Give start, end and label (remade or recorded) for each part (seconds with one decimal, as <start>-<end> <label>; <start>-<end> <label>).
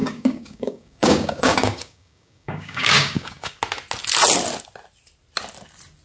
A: 0.0-3.6 remade; 3.6-6.0 recorded